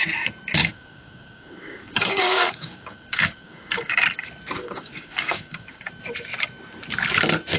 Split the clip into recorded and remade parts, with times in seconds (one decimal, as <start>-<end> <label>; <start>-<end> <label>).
0.0-0.6 recorded; 0.6-3.9 remade; 3.9-4.6 recorded; 4.6-5.9 remade; 5.9-7.6 recorded